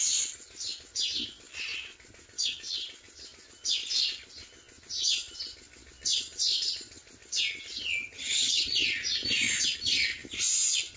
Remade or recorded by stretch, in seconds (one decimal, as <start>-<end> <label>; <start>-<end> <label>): 0.0-8.0 recorded; 8.0-8.6 remade; 8.6-11.0 recorded